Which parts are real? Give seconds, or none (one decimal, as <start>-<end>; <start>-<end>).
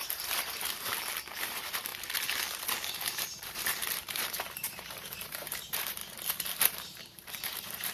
0.9-1.4; 1.9-3.1; 6.0-6.7